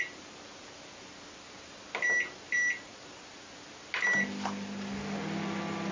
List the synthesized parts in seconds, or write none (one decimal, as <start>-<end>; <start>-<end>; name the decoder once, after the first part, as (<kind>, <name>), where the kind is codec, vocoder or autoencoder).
none